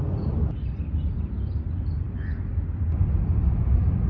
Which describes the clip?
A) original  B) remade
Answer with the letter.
A